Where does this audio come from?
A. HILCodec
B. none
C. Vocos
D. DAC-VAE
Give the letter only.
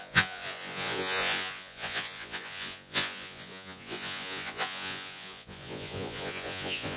C